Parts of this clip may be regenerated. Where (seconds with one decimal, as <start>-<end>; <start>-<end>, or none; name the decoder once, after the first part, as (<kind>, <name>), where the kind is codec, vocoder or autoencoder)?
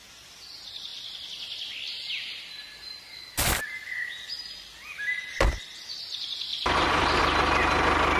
6.5-7.2 (vocoder, BigVGAN v2)